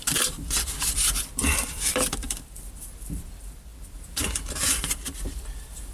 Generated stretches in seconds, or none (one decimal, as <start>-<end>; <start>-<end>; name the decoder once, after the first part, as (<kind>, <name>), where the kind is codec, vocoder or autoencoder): 0.0-5.9 (vocoder, BigVGAN v2)